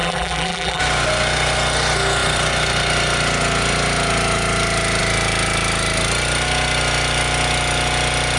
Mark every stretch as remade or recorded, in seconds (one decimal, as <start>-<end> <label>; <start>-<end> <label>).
0.0-0.8 remade; 0.8-8.4 recorded